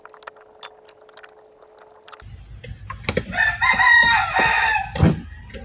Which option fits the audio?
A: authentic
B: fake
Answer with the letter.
A